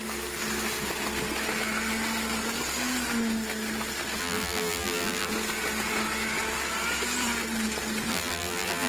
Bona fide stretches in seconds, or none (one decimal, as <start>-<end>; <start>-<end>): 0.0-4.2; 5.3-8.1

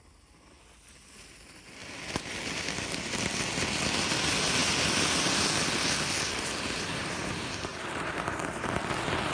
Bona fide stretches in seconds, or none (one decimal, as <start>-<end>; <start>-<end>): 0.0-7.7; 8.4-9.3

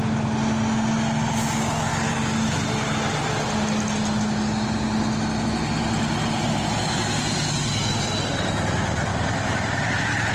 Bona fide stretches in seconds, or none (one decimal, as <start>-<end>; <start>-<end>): 0.0-9.1; 9.8-10.3

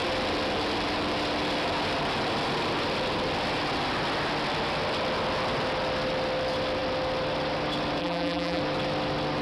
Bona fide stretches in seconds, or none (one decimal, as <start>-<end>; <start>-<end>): 0.0-8.0; 8.6-9.4